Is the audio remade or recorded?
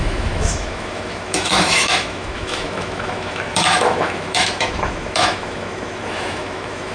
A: remade